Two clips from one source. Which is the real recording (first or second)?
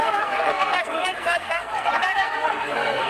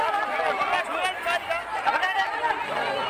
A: second